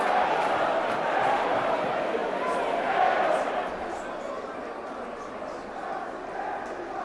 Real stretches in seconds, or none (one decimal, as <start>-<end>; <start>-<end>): 0.0-7.0